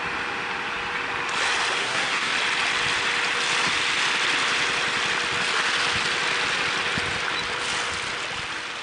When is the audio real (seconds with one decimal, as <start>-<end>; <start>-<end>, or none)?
0.0-1.8; 2.3-8.8